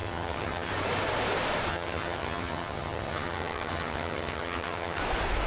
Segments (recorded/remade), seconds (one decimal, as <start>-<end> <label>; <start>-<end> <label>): 0.0-0.7 remade; 0.7-1.7 recorded; 1.7-5.0 remade; 5.0-5.5 recorded